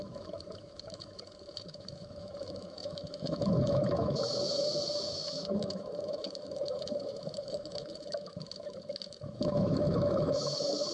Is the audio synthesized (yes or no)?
yes